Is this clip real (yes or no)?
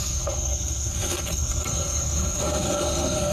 no